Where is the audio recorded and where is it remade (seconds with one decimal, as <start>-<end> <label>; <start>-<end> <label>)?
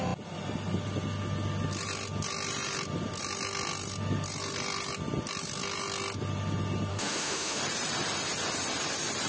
0.0-6.9 recorded; 6.9-7.6 remade; 7.6-9.3 recorded